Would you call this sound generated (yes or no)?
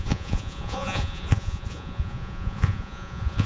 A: yes